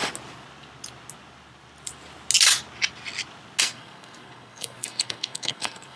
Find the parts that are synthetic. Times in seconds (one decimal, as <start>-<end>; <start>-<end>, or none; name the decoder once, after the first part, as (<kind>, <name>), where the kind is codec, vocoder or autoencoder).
3.6-6.0 (codec, SNAC)